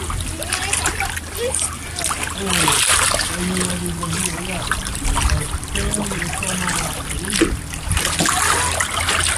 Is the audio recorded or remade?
recorded